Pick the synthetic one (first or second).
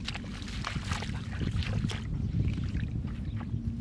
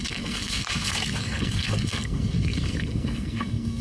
second